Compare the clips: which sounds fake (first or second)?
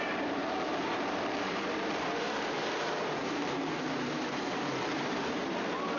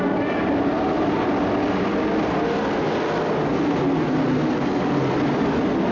first